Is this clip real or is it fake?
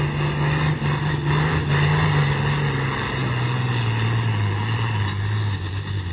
real